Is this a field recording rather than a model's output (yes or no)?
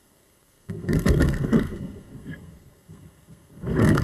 no